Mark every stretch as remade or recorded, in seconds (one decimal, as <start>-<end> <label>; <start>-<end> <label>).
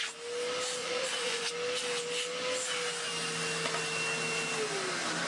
0.0-0.8 recorded; 0.8-1.5 remade; 1.5-5.3 recorded